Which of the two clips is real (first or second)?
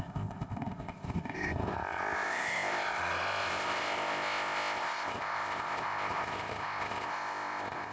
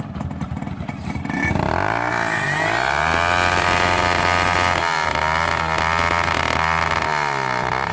second